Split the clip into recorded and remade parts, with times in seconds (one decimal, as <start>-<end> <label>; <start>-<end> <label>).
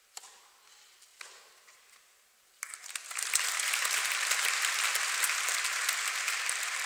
0.0-6.9 recorded